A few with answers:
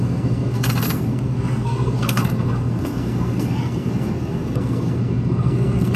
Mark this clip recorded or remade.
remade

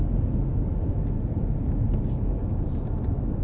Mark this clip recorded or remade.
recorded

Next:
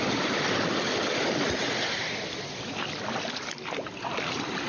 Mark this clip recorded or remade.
recorded